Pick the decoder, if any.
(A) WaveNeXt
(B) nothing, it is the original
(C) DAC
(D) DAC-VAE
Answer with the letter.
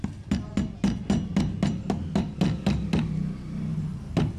B